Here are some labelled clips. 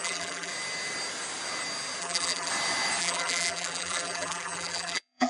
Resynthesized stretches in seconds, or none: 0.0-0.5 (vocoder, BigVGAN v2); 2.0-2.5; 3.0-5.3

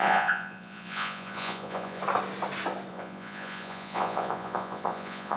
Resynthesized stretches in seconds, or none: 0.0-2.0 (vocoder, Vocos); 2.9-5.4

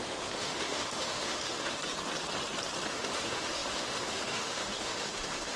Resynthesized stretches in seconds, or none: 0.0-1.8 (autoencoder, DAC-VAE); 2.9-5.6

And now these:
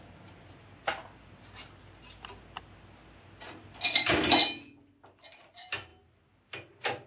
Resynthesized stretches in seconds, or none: none